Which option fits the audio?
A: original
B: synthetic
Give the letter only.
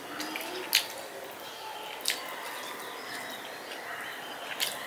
A